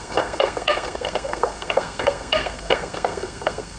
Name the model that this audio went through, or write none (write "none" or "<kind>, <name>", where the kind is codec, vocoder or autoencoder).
codec, SNAC